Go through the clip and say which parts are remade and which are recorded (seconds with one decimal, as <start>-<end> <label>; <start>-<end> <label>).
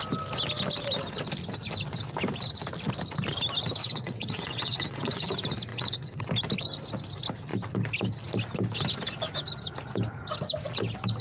0.0-3.8 recorded; 3.8-5.3 remade; 5.3-5.7 recorded; 5.7-6.2 remade; 6.2-11.2 recorded